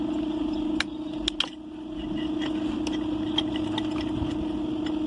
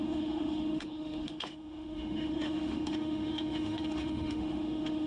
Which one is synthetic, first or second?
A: second